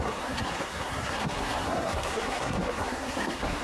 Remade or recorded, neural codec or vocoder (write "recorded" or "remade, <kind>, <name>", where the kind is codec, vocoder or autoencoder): remade, codec, SNAC